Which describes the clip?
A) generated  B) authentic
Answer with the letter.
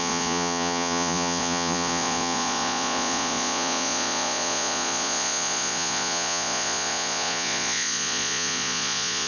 A